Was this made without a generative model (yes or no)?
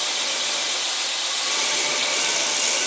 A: yes